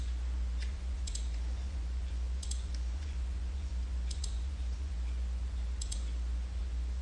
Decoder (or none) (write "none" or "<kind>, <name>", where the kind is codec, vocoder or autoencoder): vocoder, Vocos